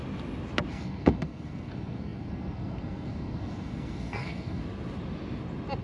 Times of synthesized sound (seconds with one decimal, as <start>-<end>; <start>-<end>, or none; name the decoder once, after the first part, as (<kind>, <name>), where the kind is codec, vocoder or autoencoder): 0.7-4.6 (codec, SNAC)